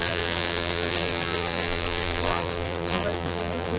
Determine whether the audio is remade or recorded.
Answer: remade